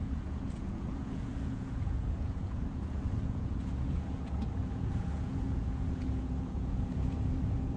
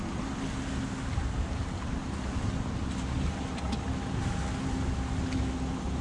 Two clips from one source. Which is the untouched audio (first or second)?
second